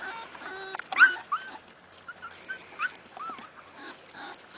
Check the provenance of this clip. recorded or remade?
recorded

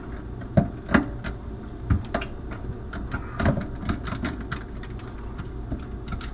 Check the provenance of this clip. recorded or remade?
recorded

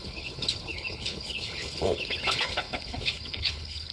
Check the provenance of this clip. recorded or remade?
remade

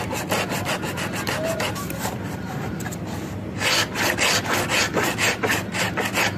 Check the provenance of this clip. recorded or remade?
remade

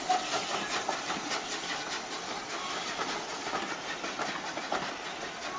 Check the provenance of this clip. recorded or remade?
recorded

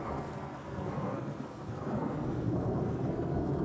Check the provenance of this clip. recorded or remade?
remade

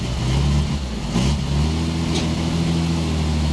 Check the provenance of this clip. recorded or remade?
recorded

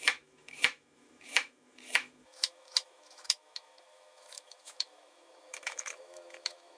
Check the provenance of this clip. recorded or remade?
remade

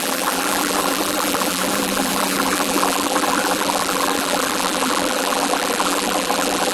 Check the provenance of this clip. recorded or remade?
remade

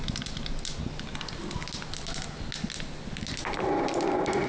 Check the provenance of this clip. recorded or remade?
recorded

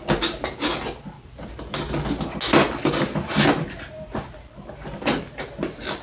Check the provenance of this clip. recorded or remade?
recorded